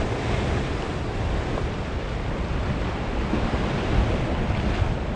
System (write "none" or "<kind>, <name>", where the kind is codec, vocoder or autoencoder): none